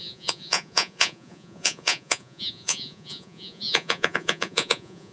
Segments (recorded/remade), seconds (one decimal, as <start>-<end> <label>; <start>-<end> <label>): 0.0-5.1 remade